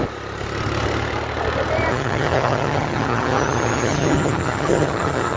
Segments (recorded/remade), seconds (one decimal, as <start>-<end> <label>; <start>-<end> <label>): 0.0-1.9 recorded; 1.9-5.4 remade